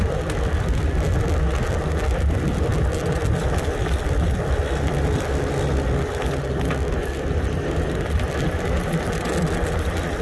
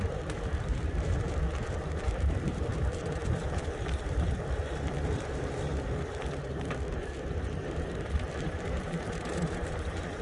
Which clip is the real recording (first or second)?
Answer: first